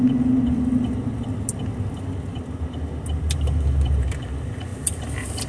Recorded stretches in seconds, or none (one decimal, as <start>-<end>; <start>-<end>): 0.0-5.5